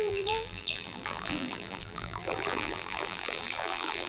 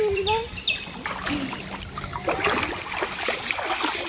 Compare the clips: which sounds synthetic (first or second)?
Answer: first